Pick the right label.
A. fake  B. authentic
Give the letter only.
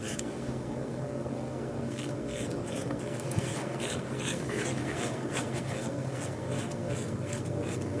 A